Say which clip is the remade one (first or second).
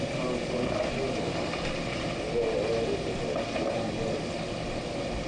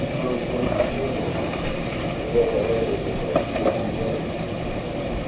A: second